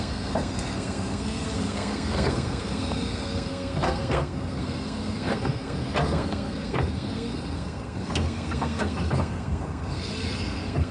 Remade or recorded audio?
remade